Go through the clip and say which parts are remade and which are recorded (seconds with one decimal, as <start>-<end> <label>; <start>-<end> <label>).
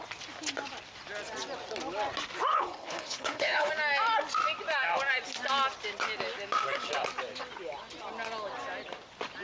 0.0-2.5 recorded; 2.5-3.7 remade; 3.7-9.4 recorded